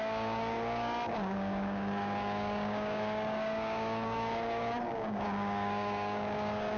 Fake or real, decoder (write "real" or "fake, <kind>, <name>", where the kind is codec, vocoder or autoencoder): fake, codec, DAC